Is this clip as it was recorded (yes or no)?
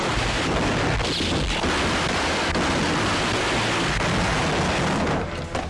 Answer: yes